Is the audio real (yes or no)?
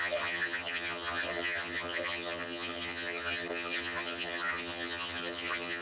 no